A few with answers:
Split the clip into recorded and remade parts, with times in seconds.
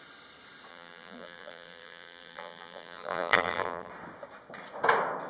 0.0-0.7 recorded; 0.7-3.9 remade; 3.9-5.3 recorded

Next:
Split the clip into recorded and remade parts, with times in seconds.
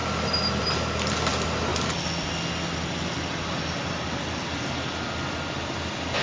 0.0-6.2 recorded